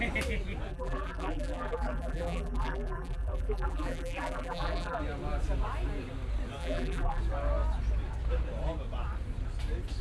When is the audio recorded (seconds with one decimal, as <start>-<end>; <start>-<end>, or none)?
0.0-0.7; 5.0-6.6; 7.2-10.0

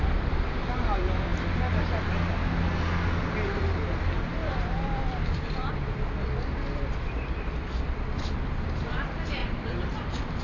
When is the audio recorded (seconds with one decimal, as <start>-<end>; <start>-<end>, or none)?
0.0-4.4; 5.7-6.5; 8.9-9.4

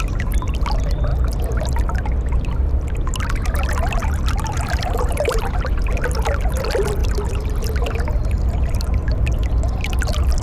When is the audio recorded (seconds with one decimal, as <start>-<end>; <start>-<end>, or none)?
0.0-4.0; 5.8-10.4

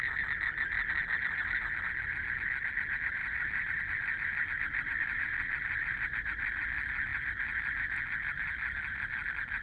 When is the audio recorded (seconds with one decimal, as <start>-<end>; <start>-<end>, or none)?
0.0-3.2; 3.8-4.9; 6.6-9.6